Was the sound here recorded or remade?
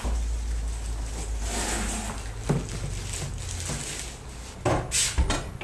recorded